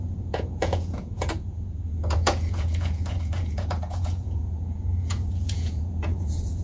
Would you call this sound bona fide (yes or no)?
no